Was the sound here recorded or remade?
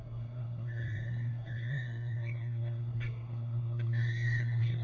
remade